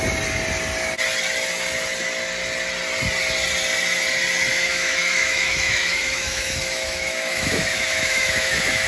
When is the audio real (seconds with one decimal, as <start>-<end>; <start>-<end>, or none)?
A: 0.0-4.5